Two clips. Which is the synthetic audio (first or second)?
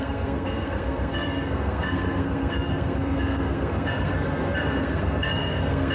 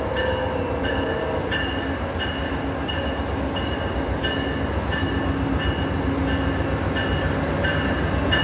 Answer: first